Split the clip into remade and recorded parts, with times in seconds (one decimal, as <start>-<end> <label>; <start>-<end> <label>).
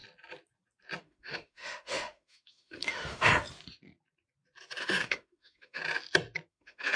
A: 0.0-1.0 recorded; 1.0-3.3 remade; 3.3-4.8 recorded; 4.8-5.8 remade; 5.8-6.5 recorded; 6.5-7.0 remade